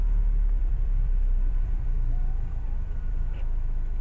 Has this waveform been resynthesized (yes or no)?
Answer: yes